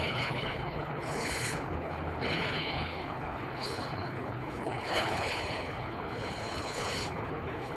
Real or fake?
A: fake